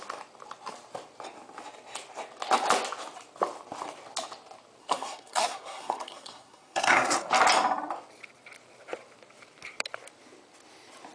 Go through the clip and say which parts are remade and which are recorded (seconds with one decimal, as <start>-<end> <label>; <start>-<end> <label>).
0.0-4.8 recorded; 4.8-7.2 remade; 7.2-11.1 recorded